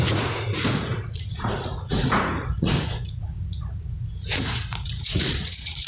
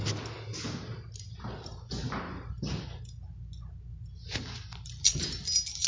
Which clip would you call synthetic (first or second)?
first